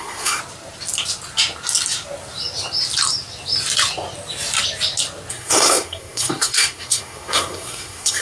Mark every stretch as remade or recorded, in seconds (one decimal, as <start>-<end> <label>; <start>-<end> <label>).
0.0-0.4 remade; 0.4-5.3 recorded; 5.3-8.2 remade